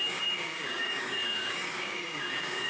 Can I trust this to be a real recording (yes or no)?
no